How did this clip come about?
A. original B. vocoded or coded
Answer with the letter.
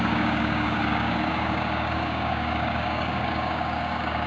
B